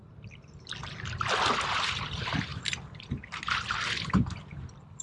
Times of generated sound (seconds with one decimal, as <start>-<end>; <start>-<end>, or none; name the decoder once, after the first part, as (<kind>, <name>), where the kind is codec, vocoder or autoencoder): none

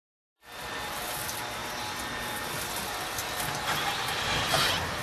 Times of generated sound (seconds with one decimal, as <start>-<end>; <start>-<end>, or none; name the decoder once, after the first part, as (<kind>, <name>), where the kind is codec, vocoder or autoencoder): 0.0-3.2 (vocoder, BigVGAN v2); 3.9-5.0

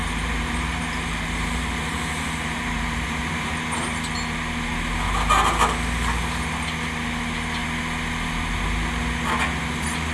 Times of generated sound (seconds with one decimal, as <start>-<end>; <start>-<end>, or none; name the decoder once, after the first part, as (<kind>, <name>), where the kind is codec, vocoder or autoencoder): 0.0-3.5 (vocoder, BigVGAN v2)

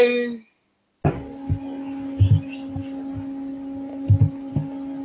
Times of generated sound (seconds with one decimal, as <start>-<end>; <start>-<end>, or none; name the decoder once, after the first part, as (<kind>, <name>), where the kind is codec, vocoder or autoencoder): none

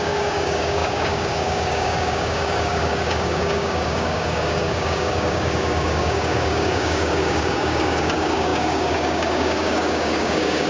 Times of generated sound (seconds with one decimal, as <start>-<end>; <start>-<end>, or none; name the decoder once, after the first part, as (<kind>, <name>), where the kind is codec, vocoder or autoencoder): 0.0-10.7 (codec, DAC)

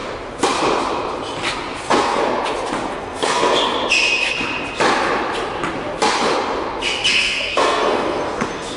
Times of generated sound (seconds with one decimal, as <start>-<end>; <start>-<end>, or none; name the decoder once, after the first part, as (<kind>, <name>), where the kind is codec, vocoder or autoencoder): 1.8-2.2 (codec, SNAC); 2.9-3.5; 7.1-8.8

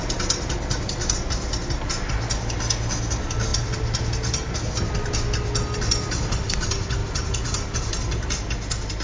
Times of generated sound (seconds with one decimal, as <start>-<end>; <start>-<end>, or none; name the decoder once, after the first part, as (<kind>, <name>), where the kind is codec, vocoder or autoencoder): 7.0-7.9 (vocoder, BigVGAN v2)

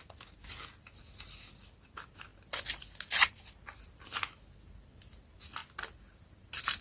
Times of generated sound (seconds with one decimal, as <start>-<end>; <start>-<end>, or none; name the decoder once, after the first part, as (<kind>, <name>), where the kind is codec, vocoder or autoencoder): none